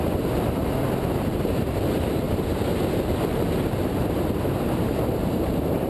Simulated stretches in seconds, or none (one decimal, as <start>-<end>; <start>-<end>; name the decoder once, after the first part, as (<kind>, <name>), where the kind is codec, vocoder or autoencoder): 0.0-0.8 (vocoder, BigVGAN v2); 1.3-2.7; 4.0-5.9